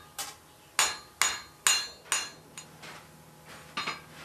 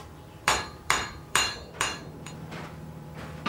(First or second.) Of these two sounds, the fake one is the second